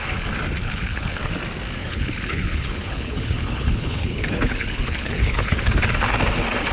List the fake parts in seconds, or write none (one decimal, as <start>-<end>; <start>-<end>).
0.6-1.2; 1.8-5.8